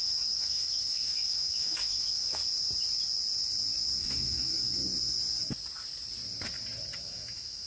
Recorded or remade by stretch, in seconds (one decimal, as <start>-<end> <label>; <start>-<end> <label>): 0.0-2.4 remade; 2.4-4.0 recorded; 4.0-4.8 remade; 4.8-7.0 recorded; 7.0-7.7 remade